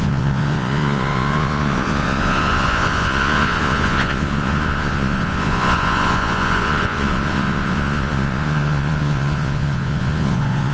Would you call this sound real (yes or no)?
no